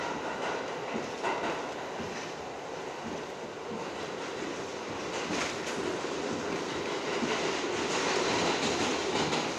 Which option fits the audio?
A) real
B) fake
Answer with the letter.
A